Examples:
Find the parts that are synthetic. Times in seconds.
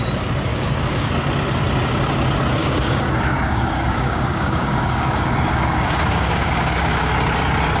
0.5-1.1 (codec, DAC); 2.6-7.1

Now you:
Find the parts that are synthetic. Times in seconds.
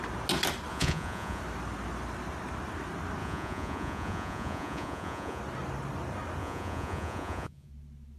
0.7-1.4 (vocoder, Vocos); 3.2-5.4; 6.4-7.7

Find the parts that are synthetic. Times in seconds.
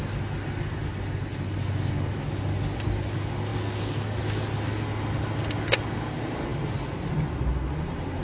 none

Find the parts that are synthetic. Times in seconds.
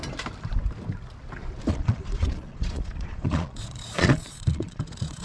1.7-5.2 (vocoder, Vocos)